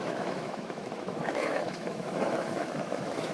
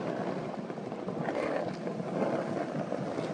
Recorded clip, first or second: second